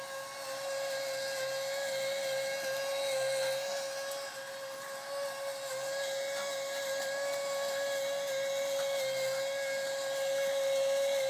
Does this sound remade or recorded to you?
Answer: recorded